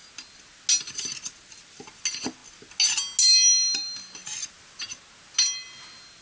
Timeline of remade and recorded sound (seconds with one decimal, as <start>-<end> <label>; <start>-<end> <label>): 0.0-6.2 recorded